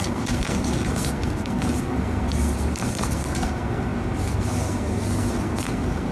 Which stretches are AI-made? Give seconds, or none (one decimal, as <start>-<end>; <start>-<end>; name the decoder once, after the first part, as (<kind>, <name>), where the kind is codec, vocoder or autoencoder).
0.0-6.1 (codec, SNAC)